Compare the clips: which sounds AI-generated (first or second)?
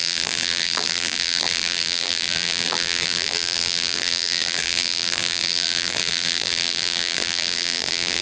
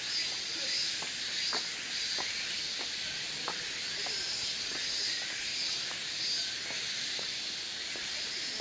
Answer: first